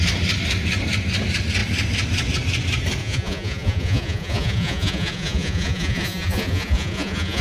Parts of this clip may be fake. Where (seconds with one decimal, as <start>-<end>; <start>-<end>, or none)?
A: 3.0-7.4